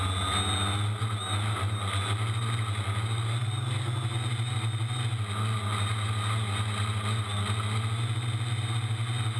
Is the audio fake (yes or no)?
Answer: no